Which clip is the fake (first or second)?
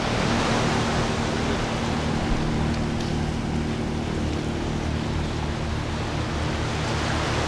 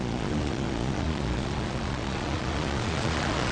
second